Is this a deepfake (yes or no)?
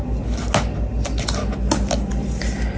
no